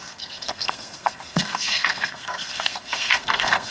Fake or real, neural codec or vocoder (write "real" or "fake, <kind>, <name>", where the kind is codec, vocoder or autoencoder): fake, codec, SNAC